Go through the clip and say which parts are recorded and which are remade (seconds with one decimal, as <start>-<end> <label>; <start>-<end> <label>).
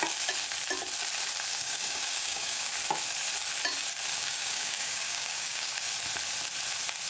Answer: 0.0-1.5 recorded; 1.5-2.7 remade; 2.7-4.1 recorded; 4.1-5.9 remade; 5.9-7.1 recorded